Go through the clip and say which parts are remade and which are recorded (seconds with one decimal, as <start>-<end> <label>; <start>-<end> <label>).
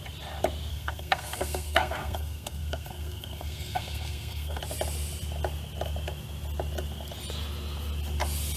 0.0-0.7 recorded; 0.7-4.6 remade; 4.6-8.6 recorded